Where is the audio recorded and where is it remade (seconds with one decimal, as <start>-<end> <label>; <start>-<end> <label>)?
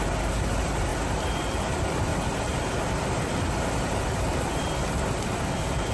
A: 0.0-5.9 recorded